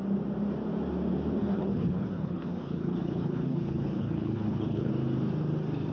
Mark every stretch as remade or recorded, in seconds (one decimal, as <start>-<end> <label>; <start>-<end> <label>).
0.0-1.4 recorded; 1.4-4.9 remade; 4.9-5.9 recorded